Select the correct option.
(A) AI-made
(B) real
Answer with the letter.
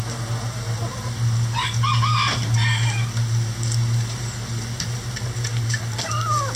B